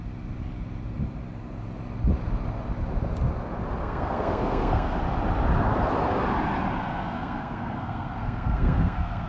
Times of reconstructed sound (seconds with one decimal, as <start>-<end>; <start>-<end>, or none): 3.8-5.0; 6.9-9.3